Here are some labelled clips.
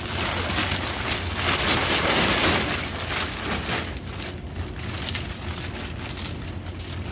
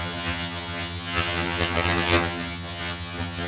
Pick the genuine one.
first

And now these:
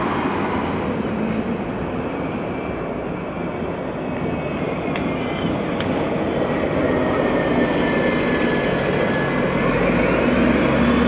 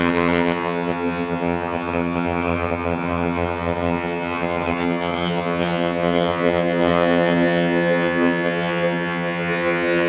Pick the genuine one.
first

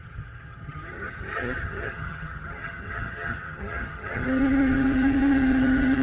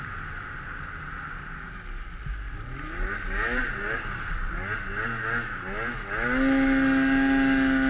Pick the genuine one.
second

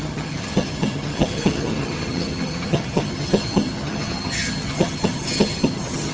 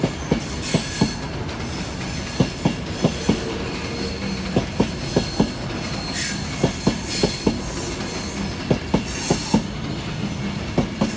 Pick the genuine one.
second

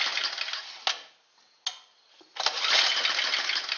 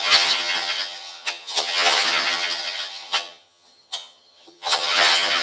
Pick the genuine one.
first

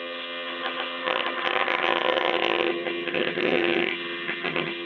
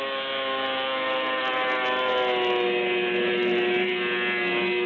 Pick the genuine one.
second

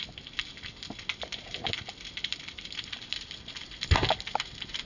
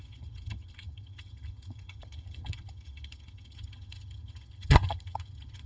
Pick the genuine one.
first